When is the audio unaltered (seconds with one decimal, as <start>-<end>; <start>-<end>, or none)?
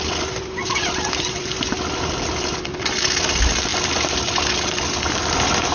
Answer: 0.0-5.7